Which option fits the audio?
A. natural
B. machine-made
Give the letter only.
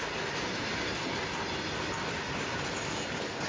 A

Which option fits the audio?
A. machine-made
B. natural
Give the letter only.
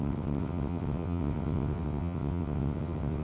A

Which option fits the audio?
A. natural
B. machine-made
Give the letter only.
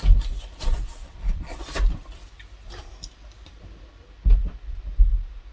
A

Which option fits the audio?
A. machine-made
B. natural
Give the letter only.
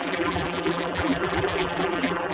A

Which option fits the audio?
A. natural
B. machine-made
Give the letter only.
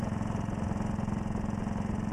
A